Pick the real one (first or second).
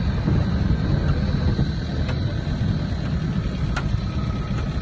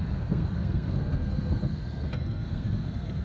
first